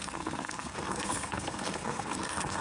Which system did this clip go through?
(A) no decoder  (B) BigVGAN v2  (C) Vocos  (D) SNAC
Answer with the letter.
D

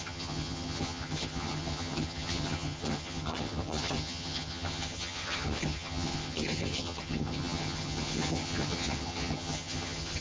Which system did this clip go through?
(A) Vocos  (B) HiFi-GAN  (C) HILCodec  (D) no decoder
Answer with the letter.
B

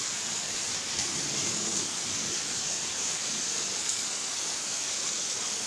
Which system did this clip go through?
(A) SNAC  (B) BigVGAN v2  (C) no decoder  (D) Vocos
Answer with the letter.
A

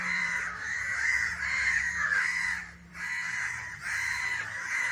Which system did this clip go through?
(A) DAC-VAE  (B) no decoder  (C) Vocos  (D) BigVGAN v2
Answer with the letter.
D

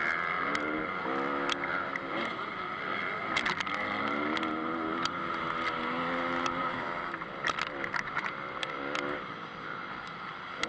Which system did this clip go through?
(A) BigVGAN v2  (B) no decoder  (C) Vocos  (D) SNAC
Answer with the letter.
B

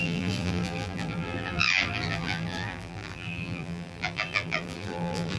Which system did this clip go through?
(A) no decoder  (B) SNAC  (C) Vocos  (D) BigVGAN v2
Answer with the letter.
D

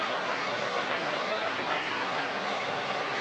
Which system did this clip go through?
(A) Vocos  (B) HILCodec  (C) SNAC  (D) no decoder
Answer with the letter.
C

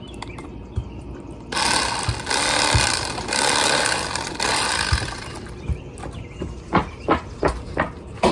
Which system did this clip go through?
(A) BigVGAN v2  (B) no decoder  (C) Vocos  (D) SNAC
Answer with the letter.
B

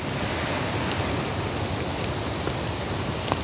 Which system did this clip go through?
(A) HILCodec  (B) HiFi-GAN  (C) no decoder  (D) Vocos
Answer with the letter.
C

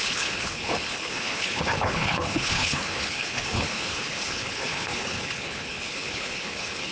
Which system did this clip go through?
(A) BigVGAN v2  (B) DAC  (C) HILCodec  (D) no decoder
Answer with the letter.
C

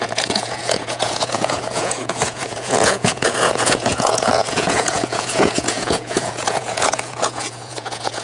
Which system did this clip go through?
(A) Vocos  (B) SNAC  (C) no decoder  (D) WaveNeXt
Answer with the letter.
A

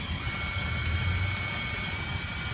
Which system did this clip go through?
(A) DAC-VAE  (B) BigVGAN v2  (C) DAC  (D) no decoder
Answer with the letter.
D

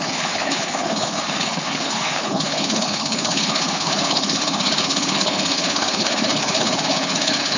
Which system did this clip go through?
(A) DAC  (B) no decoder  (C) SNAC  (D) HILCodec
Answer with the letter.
D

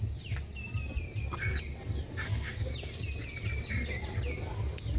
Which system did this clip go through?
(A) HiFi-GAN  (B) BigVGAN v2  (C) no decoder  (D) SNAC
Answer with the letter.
C